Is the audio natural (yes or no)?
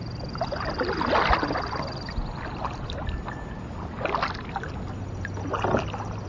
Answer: yes